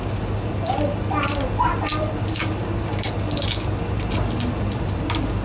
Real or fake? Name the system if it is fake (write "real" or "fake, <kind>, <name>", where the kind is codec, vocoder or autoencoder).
real